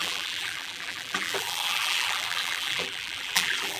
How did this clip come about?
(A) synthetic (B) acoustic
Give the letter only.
A